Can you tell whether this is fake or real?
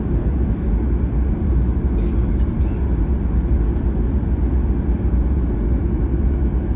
real